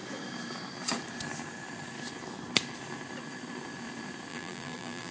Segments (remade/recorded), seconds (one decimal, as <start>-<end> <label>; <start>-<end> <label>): 0.0-4.3 recorded; 4.3-5.1 remade